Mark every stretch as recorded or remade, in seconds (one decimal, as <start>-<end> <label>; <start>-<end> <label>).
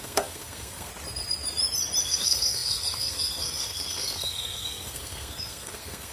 0.0-0.9 remade; 0.9-2.0 recorded; 2.0-6.1 remade